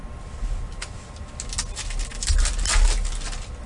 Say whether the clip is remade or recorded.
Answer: recorded